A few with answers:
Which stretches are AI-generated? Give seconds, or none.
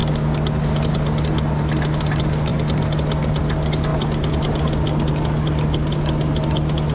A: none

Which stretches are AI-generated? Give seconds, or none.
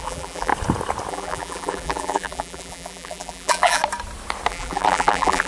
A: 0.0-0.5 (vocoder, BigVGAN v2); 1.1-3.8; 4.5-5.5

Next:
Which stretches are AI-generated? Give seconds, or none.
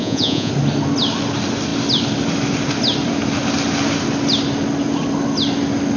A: 0.0-0.5 (vocoder, Vocos)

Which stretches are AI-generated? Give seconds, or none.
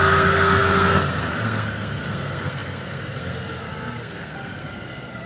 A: 0.0-5.3 (codec, SNAC)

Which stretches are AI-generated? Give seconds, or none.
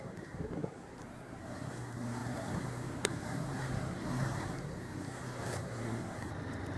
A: 0.0-6.3 (codec, SNAC)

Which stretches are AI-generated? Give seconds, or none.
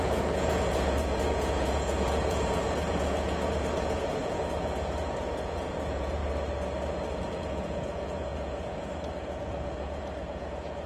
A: 0.0-6.2 (vocoder, Vocos); 7.2-10.9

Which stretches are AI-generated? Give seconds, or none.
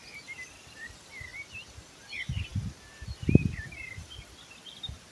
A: none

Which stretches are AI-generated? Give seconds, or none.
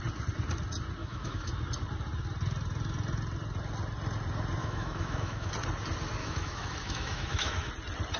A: 1.0-1.5 (autoencoder, DAC-VAE); 4.6-5.5; 6.2-7.7